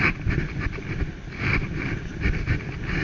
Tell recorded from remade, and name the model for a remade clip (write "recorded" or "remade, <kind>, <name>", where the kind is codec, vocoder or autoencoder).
recorded